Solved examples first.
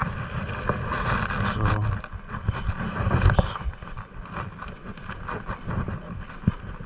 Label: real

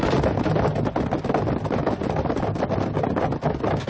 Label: real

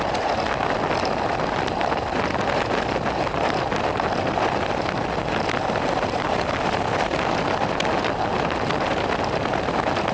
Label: real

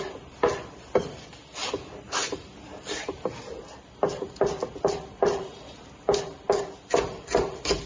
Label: real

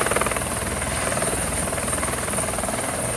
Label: real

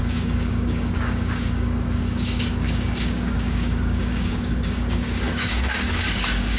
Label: fake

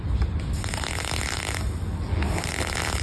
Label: real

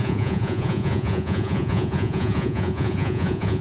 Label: fake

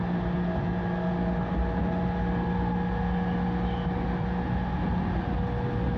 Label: real